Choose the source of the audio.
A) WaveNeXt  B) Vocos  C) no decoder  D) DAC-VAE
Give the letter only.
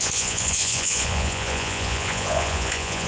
B